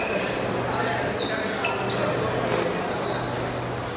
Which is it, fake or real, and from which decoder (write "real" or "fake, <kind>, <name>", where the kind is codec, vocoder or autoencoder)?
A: real